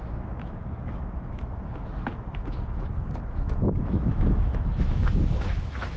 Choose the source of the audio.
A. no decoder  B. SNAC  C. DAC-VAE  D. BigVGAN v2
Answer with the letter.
C